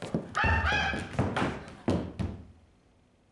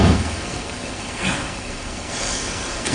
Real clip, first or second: first